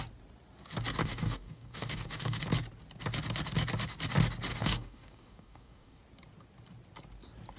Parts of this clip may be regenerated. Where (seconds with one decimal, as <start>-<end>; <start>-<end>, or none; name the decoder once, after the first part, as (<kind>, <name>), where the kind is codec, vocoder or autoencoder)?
1.0-2.4 (codec, DAC); 4.5-6.0